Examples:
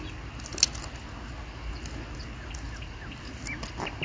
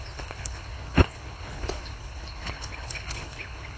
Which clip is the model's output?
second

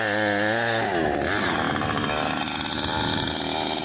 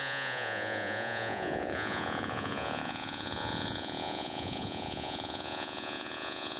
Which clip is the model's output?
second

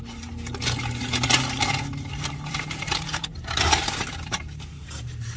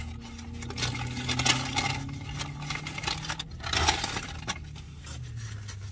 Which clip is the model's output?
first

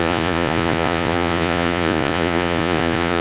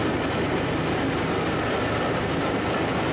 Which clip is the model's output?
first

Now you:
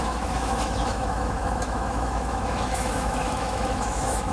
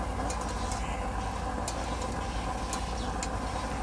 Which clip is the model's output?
first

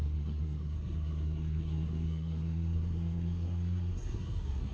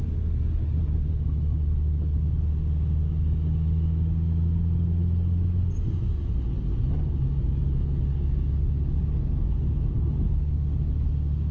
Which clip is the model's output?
first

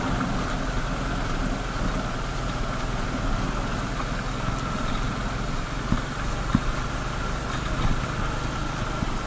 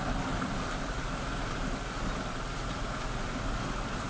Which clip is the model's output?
second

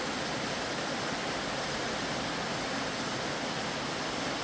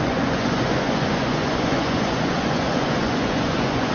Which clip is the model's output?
second